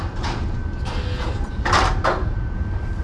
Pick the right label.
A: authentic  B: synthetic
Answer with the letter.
A